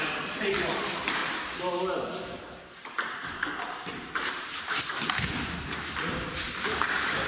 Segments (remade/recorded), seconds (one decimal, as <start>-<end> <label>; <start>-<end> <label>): 0.0-1.2 remade; 1.2-2.4 recorded; 2.4-7.3 remade